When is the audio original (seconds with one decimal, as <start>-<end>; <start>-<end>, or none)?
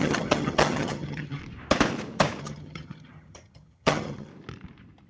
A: 1.4-2.4; 4.3-5.1